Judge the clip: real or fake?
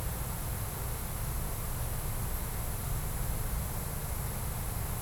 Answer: real